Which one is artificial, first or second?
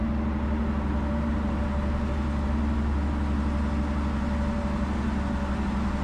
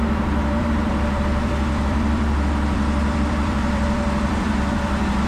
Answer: second